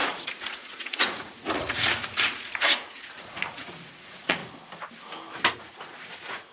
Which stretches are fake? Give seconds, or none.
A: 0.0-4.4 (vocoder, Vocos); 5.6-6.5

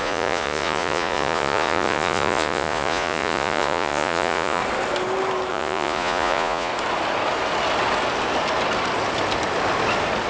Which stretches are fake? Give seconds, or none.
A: 0.0-4.6 (vocoder, Vocos); 5.5-6.7

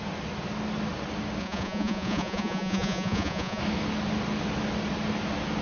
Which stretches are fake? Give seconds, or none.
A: 1.4-3.6 (vocoder, Vocos)

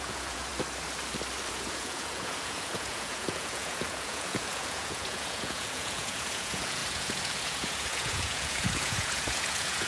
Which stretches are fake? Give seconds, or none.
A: 0.0-0.5 (vocoder, Vocos); 1.5-9.9

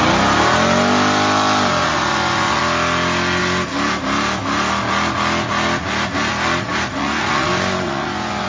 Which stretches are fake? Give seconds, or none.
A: 1.8-2.6 (vocoder, Vocos); 7.0-8.5

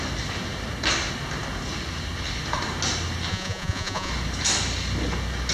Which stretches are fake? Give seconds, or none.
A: 3.3-4.1 (vocoder, Vocos)

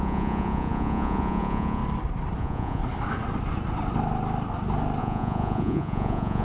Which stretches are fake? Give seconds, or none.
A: 0.0-1.8 (vocoder, Vocos); 2.4-2.8; 5.0-6.4

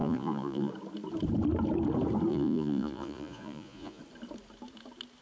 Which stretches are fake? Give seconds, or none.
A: 0.0-0.7 (vocoder, Vocos); 2.3-4.0